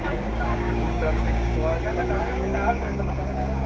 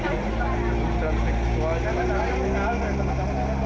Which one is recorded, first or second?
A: second